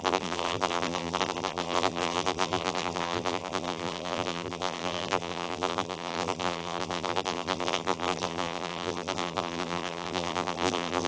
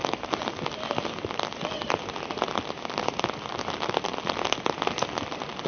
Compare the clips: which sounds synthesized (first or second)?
first